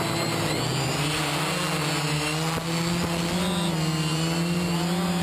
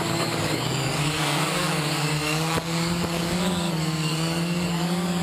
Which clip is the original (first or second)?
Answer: first